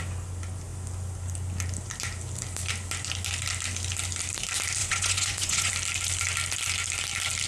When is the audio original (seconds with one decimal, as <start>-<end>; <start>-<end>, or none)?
0.0-4.8; 5.7-7.5